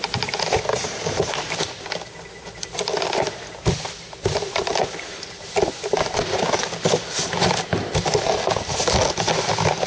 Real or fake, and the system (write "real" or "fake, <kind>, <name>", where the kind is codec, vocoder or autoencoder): real